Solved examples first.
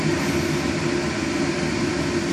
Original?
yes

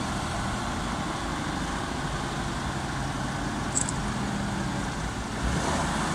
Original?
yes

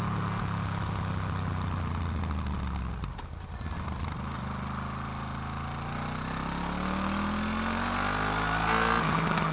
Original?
yes